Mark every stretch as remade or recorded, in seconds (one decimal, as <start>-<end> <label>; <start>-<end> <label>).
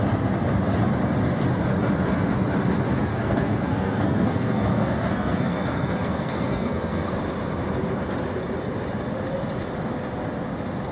0.0-3.1 recorded; 3.1-7.1 remade; 7.1-10.9 recorded